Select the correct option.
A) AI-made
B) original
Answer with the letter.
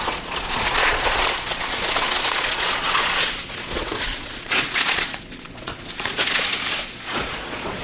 A